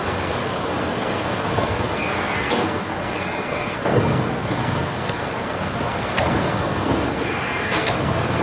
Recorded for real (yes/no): no